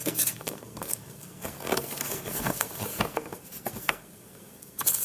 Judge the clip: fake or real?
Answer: fake